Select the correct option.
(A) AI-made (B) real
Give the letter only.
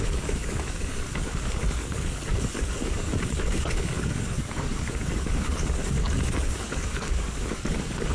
A